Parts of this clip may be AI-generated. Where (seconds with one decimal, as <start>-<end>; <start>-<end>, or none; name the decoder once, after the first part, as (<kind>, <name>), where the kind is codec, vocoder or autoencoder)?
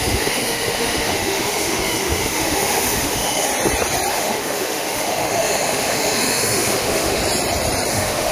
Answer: 0.0-3.5 (autoencoder, DAC-VAE); 4.1-7.2; 7.9-8.3